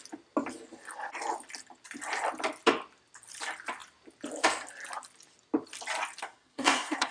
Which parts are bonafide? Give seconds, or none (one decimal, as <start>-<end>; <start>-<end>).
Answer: 0.0-6.2